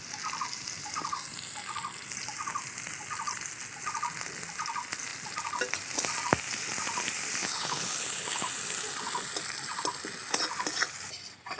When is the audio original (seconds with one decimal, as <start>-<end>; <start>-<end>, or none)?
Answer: 0.0-7.4; 8.5-11.6